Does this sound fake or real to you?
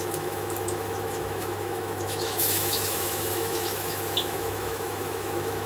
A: fake